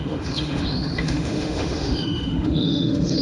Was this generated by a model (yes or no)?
yes